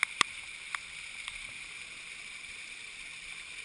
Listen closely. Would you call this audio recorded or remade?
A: recorded